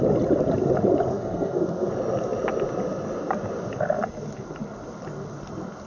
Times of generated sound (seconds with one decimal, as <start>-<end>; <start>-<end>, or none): 1.1-1.9